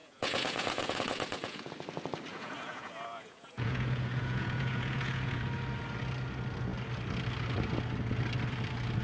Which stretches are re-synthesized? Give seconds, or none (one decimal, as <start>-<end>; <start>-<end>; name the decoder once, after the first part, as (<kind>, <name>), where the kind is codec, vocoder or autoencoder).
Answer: 0.0-1.7 (vocoder, Vocos); 2.3-5.4